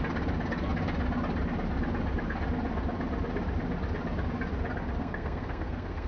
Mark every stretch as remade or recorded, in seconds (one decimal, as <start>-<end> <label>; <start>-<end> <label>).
0.0-5.0 recorded; 5.0-6.1 remade